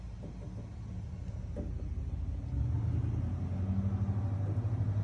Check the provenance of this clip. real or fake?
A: real